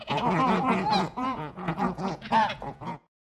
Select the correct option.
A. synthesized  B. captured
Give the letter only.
A